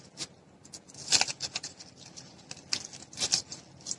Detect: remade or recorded recorded